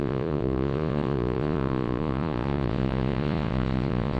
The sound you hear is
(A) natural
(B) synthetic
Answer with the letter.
B